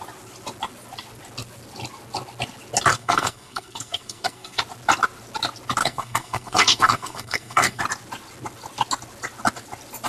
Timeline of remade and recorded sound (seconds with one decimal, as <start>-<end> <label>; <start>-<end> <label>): 0.0-2.9 recorded; 2.9-4.6 remade; 4.6-5.8 recorded; 5.8-7.8 remade; 7.8-10.1 recorded